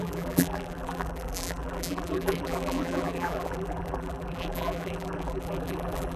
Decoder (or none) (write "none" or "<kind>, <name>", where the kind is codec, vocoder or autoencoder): vocoder, BigVGAN v2